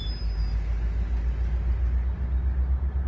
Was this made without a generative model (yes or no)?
yes